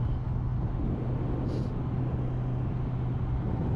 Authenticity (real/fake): real